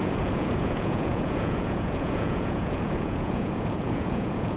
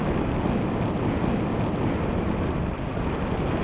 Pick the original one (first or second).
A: second